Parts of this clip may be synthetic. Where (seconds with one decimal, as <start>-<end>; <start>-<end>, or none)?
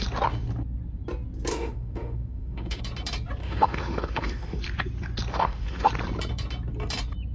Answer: 1.5-2.8; 3.4-4.6; 5.3-5.9